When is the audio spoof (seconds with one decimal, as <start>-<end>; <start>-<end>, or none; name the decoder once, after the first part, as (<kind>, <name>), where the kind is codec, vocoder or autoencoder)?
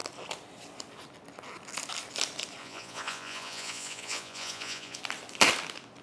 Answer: 2.6-5.0 (vocoder, Vocos)